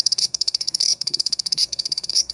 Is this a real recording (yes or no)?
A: no